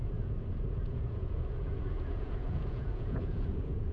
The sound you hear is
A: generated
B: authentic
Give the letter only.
A